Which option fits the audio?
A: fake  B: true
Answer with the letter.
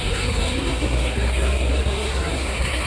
A